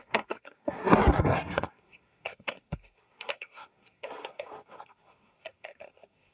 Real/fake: fake